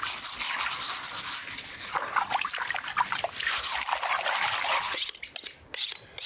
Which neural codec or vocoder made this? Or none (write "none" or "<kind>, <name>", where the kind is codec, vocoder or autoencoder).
none